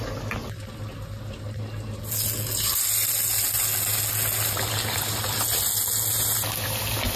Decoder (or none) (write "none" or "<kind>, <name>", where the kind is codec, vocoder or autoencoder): none